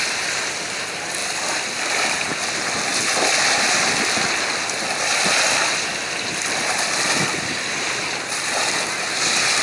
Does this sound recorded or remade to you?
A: recorded